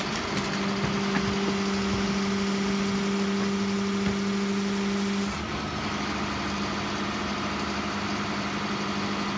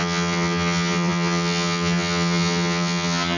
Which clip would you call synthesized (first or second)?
second